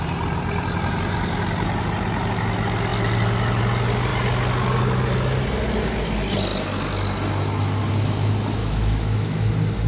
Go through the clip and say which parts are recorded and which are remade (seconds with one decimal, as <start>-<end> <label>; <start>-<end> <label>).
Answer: 0.0-8.6 recorded; 8.6-9.5 remade; 9.5-9.9 recorded